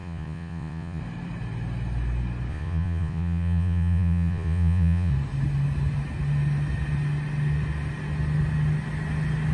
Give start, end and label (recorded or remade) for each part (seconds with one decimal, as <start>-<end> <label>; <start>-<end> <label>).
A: 0.0-1.0 remade; 1.0-2.5 recorded; 2.5-5.1 remade; 5.1-9.5 recorded